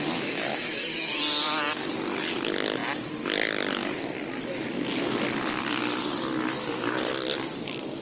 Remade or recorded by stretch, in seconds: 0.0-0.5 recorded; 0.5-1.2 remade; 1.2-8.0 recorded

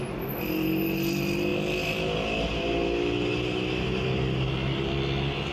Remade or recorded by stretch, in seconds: 0.0-5.5 recorded

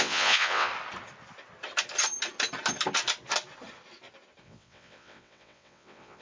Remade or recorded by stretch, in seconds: 0.0-0.7 remade; 0.7-4.4 recorded; 4.4-6.2 remade

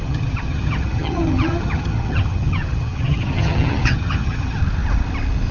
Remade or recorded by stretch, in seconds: 0.0-4.6 remade; 4.6-5.5 recorded

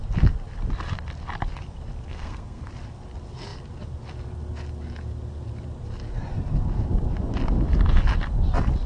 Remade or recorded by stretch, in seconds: 0.0-2.1 recorded; 2.1-2.7 remade; 2.7-8.9 recorded

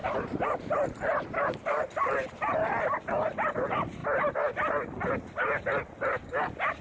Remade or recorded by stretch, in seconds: 0.0-0.9 remade; 0.9-6.8 recorded